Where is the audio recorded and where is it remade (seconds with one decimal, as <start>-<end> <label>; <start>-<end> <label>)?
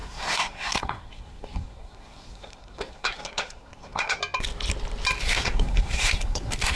0.0-4.2 remade; 4.2-5.2 recorded; 5.2-6.8 remade